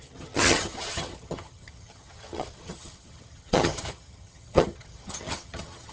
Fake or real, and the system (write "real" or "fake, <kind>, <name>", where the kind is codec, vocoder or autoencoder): fake, vocoder, HiFi-GAN